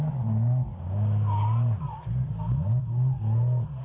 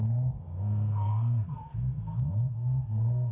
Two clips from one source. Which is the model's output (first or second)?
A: second